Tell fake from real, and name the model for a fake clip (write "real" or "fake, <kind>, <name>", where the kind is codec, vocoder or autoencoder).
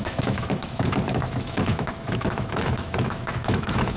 fake, autoencoder, DAC-VAE